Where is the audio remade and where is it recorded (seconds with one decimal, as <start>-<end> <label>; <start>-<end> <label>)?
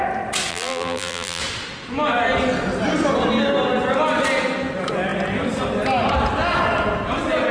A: 0.0-0.5 recorded; 0.5-1.4 remade; 1.4-7.5 recorded